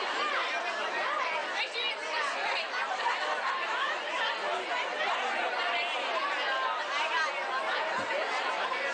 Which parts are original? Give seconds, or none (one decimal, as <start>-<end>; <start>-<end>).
0.0-8.9